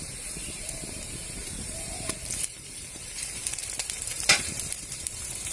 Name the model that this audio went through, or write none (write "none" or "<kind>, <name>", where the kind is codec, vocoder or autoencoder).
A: vocoder, BigVGAN v2